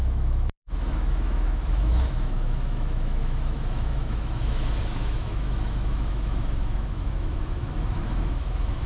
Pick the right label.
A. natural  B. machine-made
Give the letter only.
B